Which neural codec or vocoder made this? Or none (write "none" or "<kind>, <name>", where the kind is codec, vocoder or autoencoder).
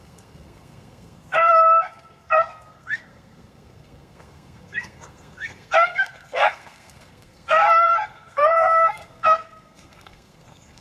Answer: codec, SNAC